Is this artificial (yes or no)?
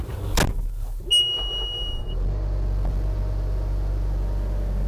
no